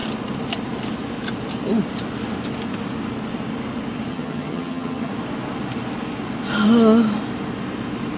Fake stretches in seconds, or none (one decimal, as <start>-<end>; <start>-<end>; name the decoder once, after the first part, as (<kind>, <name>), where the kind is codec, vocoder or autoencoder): 4.1-5.1 (vocoder, HiFi-GAN)